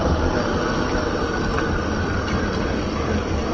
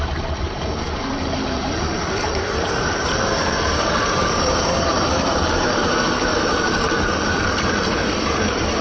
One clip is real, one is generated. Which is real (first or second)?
first